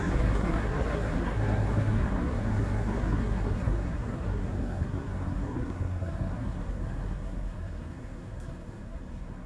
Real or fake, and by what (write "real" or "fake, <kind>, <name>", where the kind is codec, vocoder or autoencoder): fake, codec, SNAC